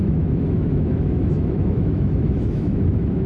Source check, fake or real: fake